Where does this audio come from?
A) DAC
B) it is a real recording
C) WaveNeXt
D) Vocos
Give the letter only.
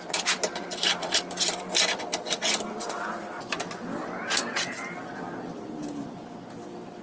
B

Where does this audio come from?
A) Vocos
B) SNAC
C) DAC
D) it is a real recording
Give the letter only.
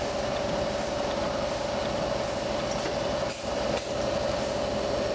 D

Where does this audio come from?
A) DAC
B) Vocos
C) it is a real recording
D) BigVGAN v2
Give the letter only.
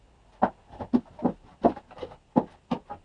C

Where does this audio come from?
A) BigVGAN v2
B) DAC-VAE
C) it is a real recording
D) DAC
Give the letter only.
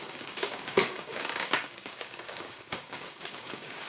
D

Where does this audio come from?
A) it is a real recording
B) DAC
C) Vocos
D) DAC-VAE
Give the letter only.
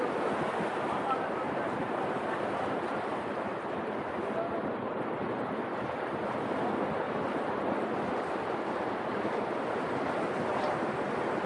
A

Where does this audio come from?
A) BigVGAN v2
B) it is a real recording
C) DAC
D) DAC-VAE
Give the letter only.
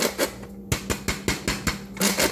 B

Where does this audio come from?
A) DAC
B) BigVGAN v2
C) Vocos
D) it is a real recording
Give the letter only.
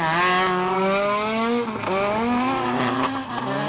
D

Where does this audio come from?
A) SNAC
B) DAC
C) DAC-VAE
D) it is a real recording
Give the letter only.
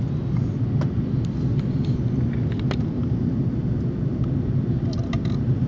D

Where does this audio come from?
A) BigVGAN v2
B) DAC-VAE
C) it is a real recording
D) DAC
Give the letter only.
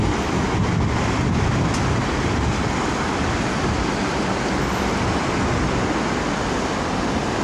C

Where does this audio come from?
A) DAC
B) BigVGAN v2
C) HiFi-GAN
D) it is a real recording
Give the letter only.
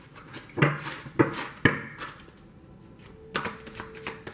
D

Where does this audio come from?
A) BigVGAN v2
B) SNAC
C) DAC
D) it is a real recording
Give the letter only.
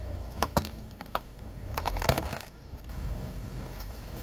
C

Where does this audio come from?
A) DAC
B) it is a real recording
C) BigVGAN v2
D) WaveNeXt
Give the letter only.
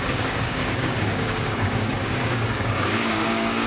A